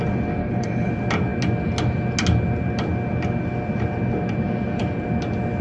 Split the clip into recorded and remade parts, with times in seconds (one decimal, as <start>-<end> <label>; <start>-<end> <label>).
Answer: 0.0-0.4 recorded; 0.4-0.9 remade; 0.9-5.6 recorded